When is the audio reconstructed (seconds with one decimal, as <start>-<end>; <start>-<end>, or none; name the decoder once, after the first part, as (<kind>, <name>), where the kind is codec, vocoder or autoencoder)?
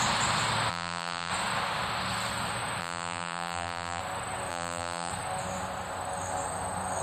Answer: 0.7-1.3 (vocoder, BigVGAN v2); 2.8-4.0; 4.5-5.1